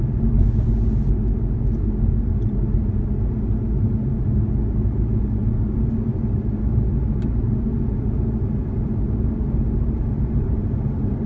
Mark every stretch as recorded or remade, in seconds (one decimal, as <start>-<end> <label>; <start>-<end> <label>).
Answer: 0.0-11.3 recorded